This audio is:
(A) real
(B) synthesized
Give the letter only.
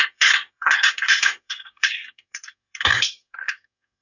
B